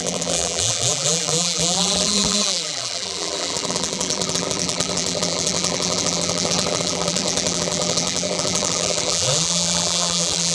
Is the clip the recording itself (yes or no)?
no